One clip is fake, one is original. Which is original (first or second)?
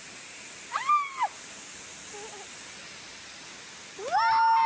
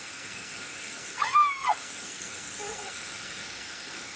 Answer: first